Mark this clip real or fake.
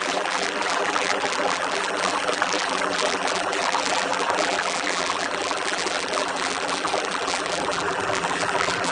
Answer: fake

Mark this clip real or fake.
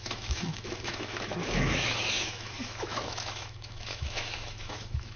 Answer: fake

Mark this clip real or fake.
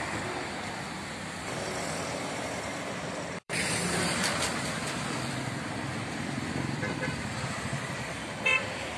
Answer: fake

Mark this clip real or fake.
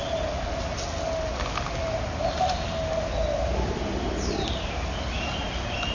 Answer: real